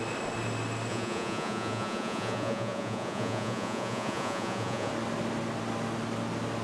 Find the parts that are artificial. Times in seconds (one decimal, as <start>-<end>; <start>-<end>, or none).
0.9-4.9